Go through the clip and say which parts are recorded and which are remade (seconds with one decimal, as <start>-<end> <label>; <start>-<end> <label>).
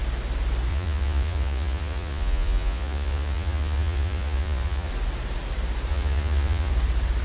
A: 0.0-0.7 recorded; 0.7-4.9 remade; 4.9-5.9 recorded; 5.9-6.7 remade; 6.7-7.2 recorded